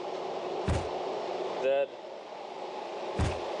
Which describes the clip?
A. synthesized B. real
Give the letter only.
B